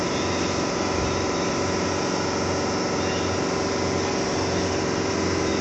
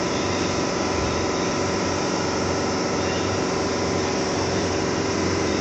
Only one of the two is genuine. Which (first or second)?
first